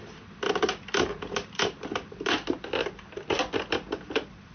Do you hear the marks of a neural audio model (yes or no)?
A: no